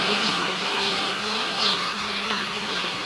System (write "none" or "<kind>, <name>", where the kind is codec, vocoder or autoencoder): codec, SNAC